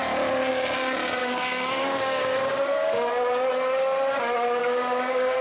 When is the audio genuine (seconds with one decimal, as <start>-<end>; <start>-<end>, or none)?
0.0-1.2; 3.1-4.6